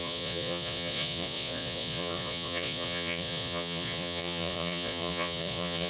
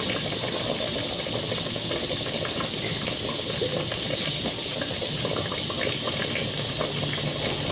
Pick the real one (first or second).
second